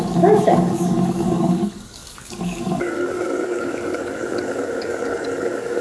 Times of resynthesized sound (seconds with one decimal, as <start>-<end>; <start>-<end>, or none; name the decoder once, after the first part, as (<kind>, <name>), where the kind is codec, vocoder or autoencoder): 0.0-5.8 (codec, DAC)